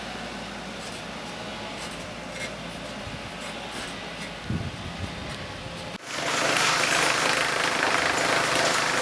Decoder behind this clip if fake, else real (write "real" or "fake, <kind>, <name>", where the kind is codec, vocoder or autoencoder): real